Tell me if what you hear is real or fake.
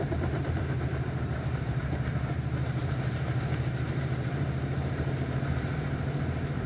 fake